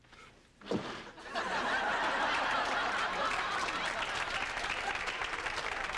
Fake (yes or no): no